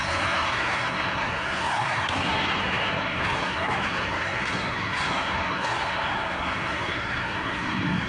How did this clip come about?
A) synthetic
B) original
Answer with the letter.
A